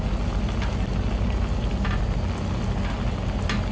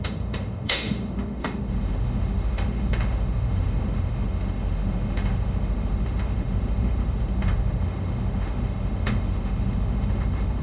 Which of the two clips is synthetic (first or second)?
second